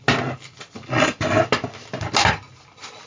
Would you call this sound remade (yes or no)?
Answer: no